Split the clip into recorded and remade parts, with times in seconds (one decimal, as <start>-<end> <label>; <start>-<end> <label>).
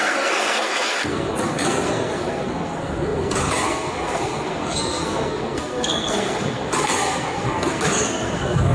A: 0.0-8.7 remade